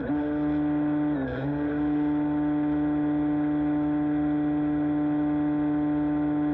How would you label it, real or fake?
real